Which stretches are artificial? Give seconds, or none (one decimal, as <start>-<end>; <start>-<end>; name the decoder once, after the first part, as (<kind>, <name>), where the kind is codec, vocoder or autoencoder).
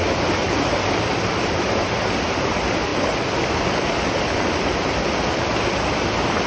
none